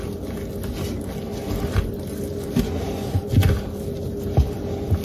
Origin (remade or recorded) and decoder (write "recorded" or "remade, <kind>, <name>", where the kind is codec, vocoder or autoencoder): recorded